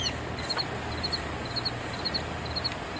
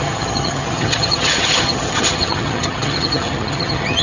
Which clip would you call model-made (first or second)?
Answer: second